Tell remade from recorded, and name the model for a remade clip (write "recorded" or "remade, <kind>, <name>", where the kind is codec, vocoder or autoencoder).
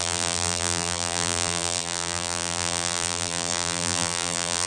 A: remade, vocoder, BigVGAN v2